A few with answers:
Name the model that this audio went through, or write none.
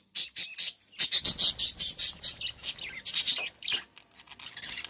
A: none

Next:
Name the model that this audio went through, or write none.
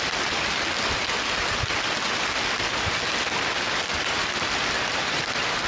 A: none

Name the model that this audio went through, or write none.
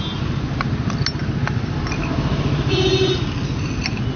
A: none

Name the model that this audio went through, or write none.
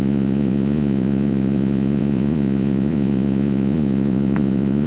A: vocoder, Vocos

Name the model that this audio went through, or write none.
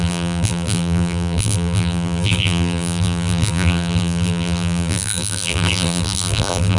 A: vocoder, BigVGAN v2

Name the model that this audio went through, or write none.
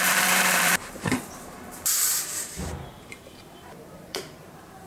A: vocoder, BigVGAN v2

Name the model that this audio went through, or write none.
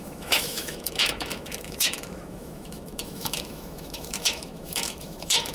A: autoencoder, DAC-VAE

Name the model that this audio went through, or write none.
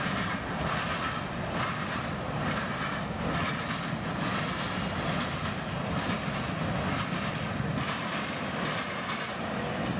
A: none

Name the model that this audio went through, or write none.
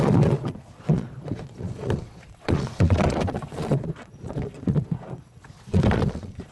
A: vocoder, Vocos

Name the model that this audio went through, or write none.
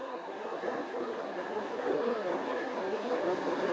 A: codec, SNAC